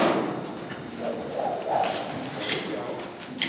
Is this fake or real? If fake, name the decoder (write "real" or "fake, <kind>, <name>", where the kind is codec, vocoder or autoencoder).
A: real